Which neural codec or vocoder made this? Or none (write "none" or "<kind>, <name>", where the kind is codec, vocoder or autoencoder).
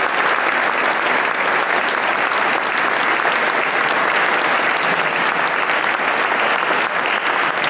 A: none